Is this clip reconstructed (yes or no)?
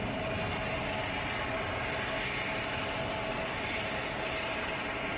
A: no